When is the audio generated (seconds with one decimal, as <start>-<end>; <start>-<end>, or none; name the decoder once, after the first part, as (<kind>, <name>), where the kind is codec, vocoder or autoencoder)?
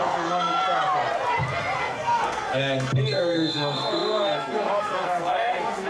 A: 0.0-0.6 (codec, SNAC); 1.8-5.9